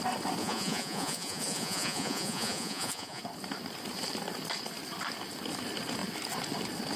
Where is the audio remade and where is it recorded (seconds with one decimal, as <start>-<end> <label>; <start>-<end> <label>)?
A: 0.0-0.4 recorded; 0.4-3.2 remade; 3.2-7.0 recorded

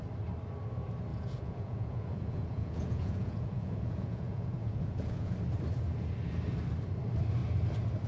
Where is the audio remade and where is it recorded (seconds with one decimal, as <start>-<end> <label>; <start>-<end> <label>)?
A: 0.0-1.1 recorded; 1.1-5.3 remade; 5.3-8.1 recorded

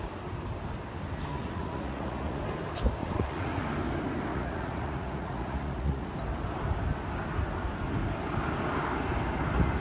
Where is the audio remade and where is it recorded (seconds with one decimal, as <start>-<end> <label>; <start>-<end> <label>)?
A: 0.0-1.3 recorded; 1.3-2.4 remade; 2.4-3.0 recorded; 3.0-3.6 remade; 3.6-4.3 recorded; 4.3-6.1 remade; 6.1-9.8 recorded

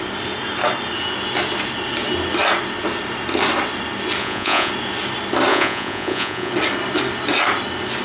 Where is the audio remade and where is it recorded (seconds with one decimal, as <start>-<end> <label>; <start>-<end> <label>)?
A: 0.0-4.2 recorded; 4.2-4.7 remade; 4.7-5.5 recorded; 5.5-6.5 remade; 6.5-8.0 recorded